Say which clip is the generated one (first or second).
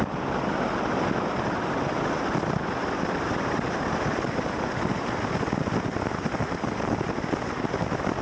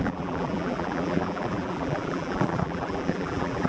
second